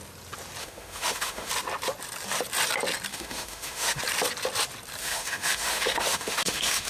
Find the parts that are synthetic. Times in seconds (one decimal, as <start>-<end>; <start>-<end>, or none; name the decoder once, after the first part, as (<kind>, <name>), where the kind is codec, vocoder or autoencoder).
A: 0.6-1.5 (autoencoder, DAC-VAE); 3.1-4.0; 5.0-6.9